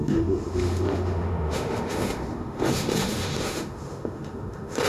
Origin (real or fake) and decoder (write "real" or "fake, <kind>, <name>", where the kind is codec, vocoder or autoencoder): fake, autoencoder, DAC-VAE